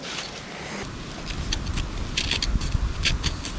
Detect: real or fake real